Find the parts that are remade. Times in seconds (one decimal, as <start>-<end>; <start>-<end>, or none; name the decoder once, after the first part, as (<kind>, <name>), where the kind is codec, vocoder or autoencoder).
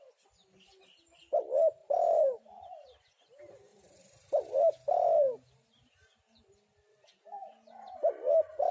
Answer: 1.8-3.0 (vocoder, BigVGAN v2); 3.7-8.7